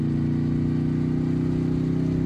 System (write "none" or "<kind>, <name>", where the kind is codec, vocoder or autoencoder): none